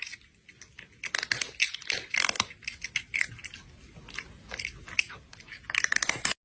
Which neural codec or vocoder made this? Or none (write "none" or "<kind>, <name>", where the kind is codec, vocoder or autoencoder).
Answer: none